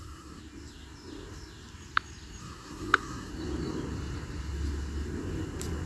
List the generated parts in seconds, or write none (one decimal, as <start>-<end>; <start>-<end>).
0.0-0.4; 2.4-3.3